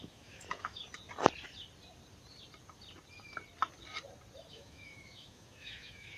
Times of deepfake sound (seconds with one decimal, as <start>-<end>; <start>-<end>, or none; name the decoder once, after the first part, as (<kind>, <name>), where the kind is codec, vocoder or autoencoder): 0.0-0.8 (autoencoder, DAC-VAE); 4.5-6.2